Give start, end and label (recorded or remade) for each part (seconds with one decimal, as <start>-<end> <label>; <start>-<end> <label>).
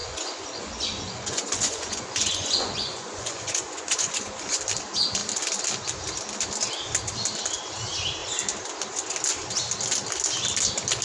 0.0-4.6 remade; 4.6-11.0 recorded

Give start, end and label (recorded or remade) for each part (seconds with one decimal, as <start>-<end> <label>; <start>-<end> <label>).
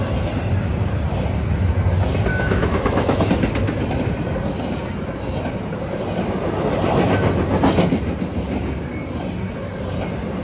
0.0-2.3 recorded; 2.3-3.3 remade; 3.3-10.4 recorded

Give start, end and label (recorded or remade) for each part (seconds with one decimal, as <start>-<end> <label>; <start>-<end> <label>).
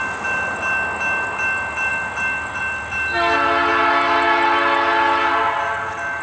0.0-6.2 recorded